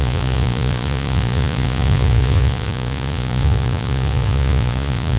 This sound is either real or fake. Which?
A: fake